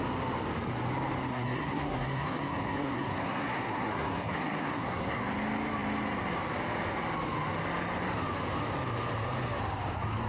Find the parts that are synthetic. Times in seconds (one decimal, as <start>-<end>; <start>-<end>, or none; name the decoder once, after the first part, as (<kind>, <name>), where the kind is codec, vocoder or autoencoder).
1.3-5.2 (codec, SNAC)